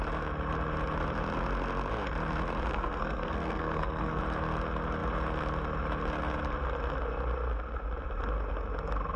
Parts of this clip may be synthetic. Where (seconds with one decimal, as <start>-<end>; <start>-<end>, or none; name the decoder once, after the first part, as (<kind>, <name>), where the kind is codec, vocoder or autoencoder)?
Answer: 2.7-4.2 (codec, SNAC)